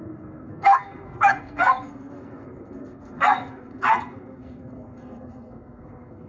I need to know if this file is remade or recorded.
remade